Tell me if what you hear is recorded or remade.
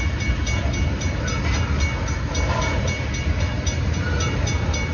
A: recorded